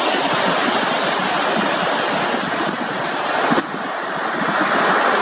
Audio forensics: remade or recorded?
recorded